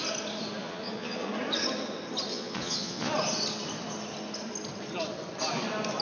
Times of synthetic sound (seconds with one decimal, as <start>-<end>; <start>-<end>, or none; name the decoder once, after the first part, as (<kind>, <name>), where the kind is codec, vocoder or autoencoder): 0.6-1.3 (vocoder, Vocos); 2.3-3.1